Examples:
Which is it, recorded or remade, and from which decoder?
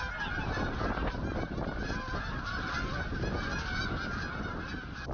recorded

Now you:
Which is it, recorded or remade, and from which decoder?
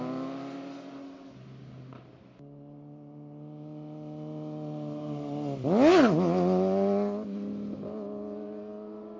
recorded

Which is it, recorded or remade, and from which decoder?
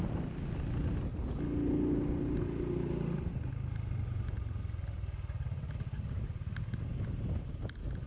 recorded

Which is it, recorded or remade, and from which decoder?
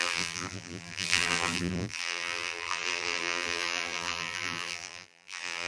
remade, vocoder, BigVGAN v2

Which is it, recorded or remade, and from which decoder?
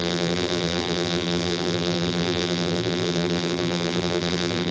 remade, vocoder, BigVGAN v2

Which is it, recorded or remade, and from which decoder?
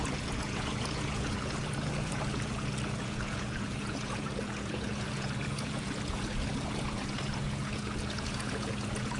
remade, vocoder, Vocos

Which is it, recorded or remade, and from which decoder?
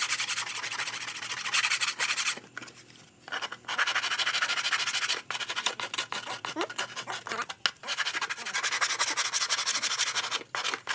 recorded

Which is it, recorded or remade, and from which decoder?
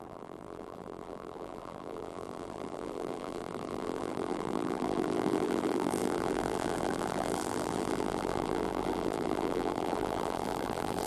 remade, vocoder, BigVGAN v2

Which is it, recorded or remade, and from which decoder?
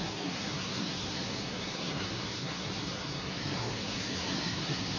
remade, codec, SNAC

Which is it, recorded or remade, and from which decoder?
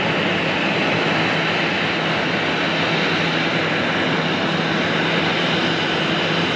recorded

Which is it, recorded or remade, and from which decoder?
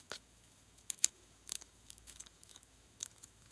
remade, autoencoder, DAC-VAE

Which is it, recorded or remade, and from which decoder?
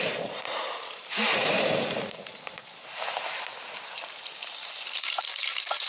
remade, vocoder, BigVGAN v2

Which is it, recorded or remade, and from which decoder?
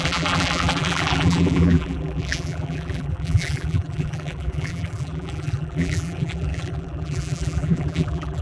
remade, vocoder, BigVGAN v2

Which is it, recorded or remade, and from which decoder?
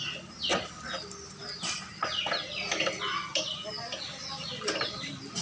recorded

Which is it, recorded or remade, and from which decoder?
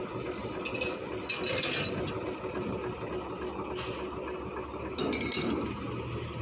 recorded